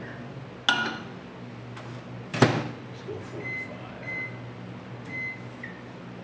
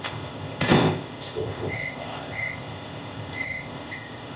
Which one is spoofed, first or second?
second